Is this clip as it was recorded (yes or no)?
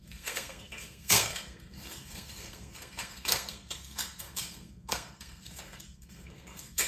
no